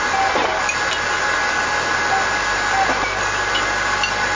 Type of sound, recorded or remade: recorded